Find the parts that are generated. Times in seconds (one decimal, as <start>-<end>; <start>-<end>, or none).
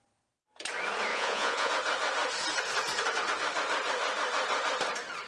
1.1-1.7